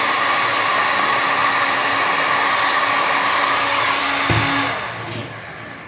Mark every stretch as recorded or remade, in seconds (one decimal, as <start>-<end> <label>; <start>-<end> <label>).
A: 0.0-0.7 recorded; 0.7-4.0 remade; 4.0-5.2 recorded; 5.2-5.9 remade